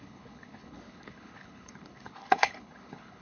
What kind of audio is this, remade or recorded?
remade